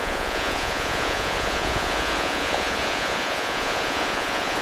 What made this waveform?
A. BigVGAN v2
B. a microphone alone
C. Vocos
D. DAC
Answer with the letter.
C